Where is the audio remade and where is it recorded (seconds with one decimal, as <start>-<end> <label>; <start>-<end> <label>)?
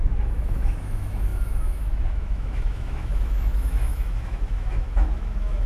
0.0-5.7 remade